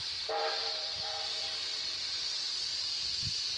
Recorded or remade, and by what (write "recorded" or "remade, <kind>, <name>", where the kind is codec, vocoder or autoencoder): remade, vocoder, BigVGAN v2